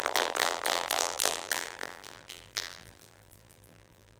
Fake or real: fake